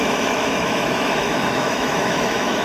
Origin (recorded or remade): remade